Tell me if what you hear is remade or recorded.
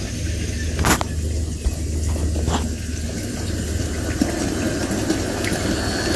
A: recorded